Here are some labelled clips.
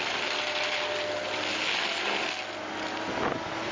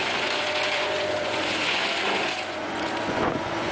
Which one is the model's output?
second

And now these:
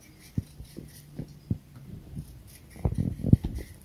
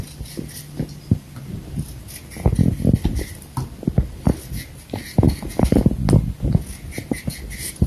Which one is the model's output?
first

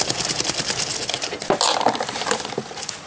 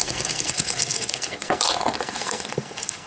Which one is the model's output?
second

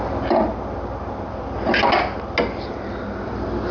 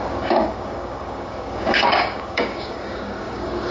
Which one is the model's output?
second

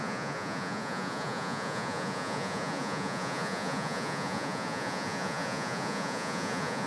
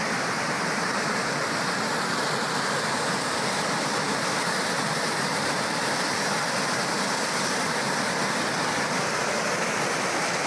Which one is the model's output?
first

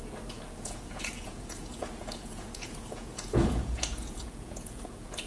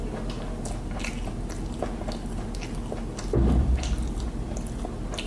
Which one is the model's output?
first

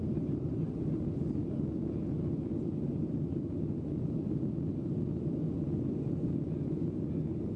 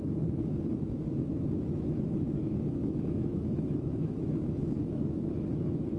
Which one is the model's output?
second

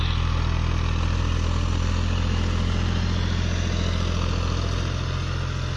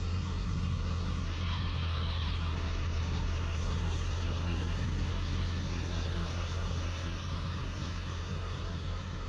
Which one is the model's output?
second